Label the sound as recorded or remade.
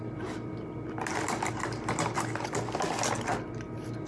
recorded